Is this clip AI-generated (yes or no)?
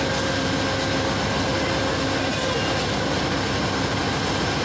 no